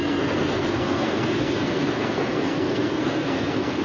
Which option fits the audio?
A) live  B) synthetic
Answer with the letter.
B